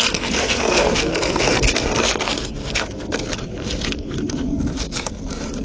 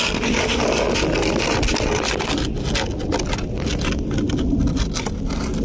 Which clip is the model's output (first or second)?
first